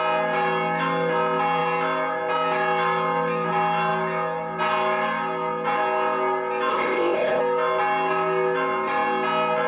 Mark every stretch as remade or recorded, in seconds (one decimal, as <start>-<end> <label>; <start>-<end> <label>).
0.0-6.7 recorded; 6.7-7.4 remade; 7.4-9.7 recorded